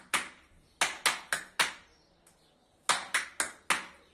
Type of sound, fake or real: real